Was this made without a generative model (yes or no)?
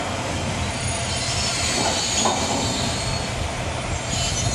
yes